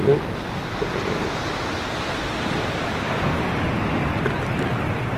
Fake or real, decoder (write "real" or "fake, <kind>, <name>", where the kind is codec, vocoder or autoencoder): real